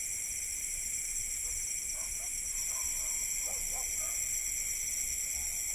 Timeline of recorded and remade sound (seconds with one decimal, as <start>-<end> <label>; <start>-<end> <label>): 0.0-5.7 recorded